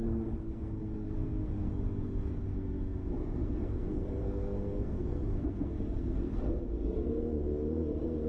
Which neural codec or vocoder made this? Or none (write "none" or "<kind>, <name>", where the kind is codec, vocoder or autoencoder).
codec, SNAC